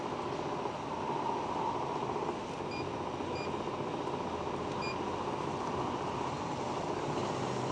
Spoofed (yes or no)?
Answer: no